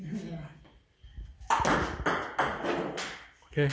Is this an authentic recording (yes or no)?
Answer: yes